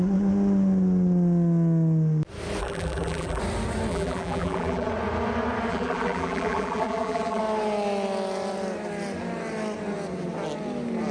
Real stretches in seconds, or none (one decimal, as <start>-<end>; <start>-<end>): 0.0-2.6; 3.4-3.9; 4.9-5.7; 7.4-11.1